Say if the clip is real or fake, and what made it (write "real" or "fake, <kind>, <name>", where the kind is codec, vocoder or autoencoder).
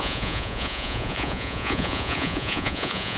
fake, vocoder, Vocos